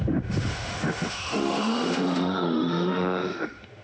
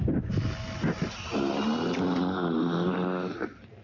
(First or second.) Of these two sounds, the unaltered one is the second